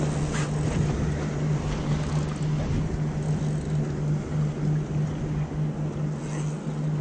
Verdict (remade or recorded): recorded